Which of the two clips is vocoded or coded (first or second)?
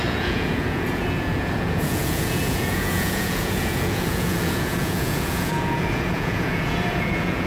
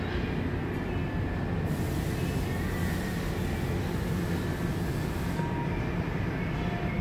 first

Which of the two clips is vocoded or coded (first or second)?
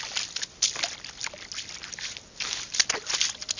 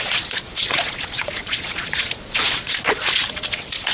second